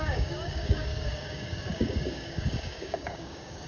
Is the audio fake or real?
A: fake